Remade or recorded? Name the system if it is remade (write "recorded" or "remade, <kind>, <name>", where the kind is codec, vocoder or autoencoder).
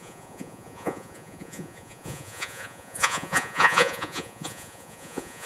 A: remade, vocoder, Vocos